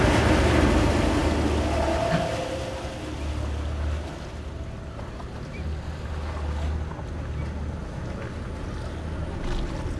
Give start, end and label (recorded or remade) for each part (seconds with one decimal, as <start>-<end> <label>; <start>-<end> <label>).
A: 0.0-10.0 recorded